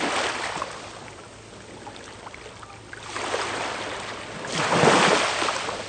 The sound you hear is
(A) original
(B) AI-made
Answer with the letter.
A